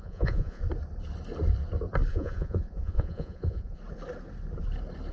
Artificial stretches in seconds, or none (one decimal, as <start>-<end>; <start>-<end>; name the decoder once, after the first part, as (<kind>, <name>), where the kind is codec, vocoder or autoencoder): 0.0-0.6 (vocoder, Vocos); 2.1-3.8